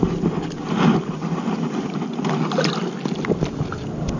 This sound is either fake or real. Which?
real